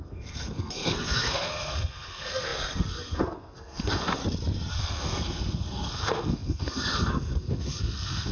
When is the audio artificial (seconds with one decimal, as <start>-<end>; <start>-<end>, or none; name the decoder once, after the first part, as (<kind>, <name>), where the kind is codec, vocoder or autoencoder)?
0.0-4.2 (codec, SNAC); 4.7-8.3